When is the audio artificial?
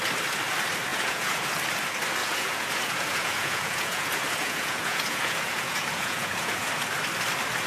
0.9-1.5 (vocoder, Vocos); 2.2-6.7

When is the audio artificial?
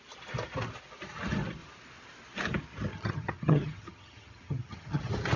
2.9-5.0 (vocoder, HiFi-GAN)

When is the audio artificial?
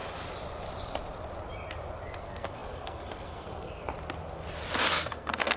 2.2-3.9 (codec, SNAC); 4.9-5.6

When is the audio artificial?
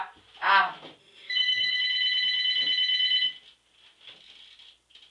1.0-1.8 (autoencoder, DAC-VAE)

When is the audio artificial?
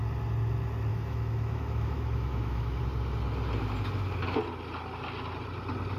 0.9-2.8 (autoencoder, DAC-VAE)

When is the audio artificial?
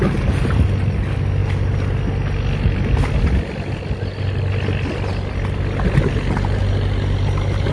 none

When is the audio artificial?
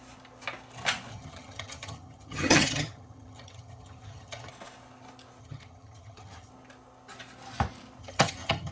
1.1-4.5 (vocoder, HiFi-GAN); 5.4-6.5; 8.0-8.7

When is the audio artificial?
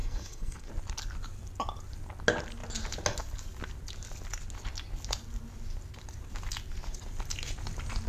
0.0-0.7 (codec, SNAC)